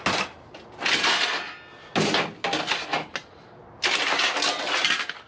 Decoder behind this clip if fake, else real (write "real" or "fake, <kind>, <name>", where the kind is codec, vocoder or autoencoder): real